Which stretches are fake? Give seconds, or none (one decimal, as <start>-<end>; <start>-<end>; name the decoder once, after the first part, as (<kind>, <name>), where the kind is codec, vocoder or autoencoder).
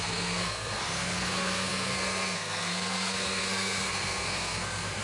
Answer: 0.0-5.0 (codec, SNAC)